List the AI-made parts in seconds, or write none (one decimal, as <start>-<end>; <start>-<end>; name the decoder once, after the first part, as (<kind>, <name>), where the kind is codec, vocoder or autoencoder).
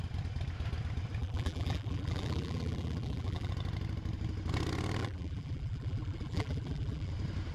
1.2-3.5 (vocoder, BigVGAN v2); 5.0-7.1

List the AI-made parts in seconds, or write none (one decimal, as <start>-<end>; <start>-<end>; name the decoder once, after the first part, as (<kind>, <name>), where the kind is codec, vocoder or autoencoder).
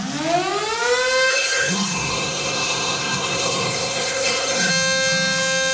1.3-4.7 (codec, SNAC)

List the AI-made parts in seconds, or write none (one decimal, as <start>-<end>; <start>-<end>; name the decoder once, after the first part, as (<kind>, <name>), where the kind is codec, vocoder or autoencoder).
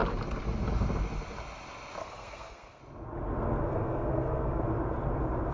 2.0-2.8 (codec, SNAC); 3.6-4.6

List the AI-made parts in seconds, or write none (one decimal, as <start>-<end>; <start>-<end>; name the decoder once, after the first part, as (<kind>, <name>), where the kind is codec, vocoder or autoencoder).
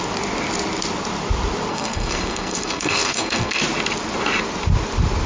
1.7-3.6 (codec, SNAC)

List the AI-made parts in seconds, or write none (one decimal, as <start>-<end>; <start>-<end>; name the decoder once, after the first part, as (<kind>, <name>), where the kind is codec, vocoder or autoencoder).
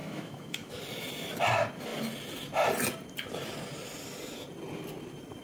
0.0-0.8 (autoencoder, DAC-VAE)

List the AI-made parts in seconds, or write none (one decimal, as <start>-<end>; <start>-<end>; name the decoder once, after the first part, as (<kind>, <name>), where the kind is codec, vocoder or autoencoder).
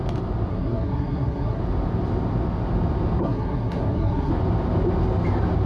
0.5-1.6 (codec, SNAC); 3.2-4.3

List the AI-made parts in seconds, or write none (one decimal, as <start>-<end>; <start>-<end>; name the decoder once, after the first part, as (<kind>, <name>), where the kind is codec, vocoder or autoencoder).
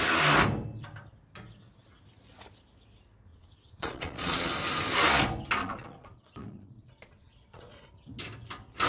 3.3-4.5 (vocoder, Vocos); 5.6-7.9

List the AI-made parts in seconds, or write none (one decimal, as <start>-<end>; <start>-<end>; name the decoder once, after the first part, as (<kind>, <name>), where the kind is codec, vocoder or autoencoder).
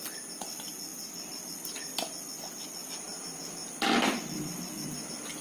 0.9-2.4 (vocoder, BigVGAN v2)